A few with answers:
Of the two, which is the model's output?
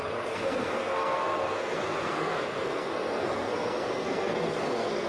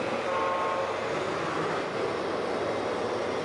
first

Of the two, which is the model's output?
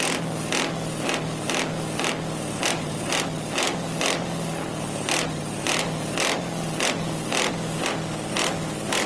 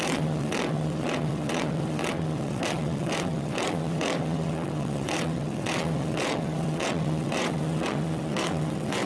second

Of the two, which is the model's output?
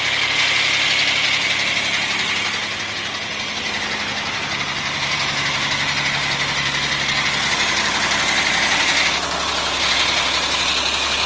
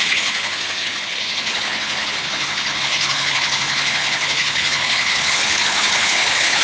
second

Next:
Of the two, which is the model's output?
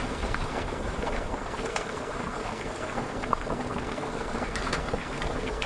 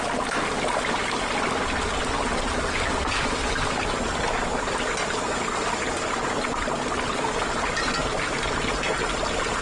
first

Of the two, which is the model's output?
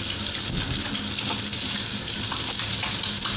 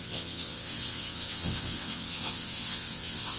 second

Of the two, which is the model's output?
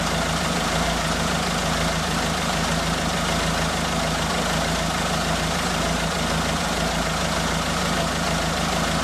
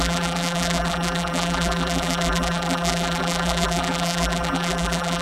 second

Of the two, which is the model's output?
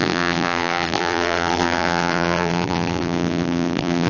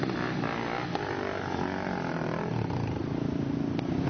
first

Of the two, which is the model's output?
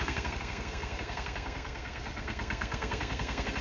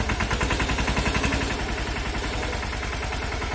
first